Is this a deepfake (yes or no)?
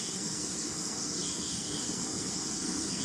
yes